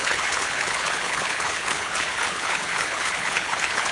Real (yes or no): no